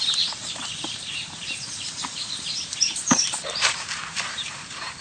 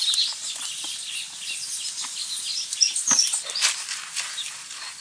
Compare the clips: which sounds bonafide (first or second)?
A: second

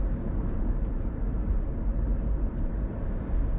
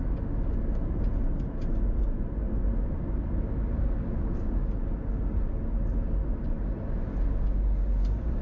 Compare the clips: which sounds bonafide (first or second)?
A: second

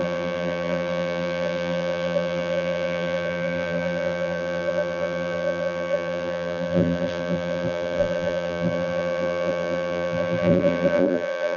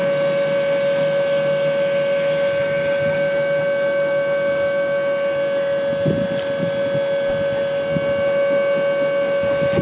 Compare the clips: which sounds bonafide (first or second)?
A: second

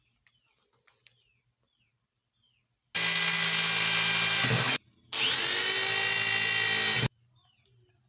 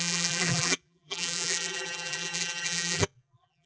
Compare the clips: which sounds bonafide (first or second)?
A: first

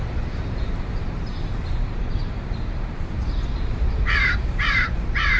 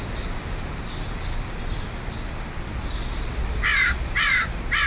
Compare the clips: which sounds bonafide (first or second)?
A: second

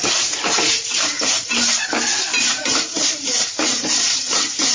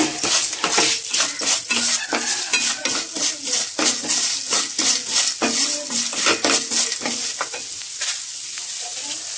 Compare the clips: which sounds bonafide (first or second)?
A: second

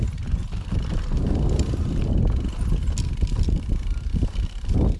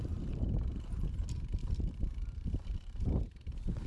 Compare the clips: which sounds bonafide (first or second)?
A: first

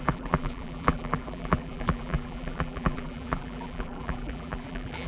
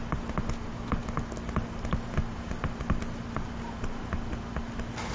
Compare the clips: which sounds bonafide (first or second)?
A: second